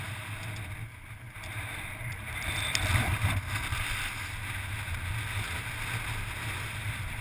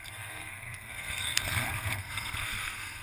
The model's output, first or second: second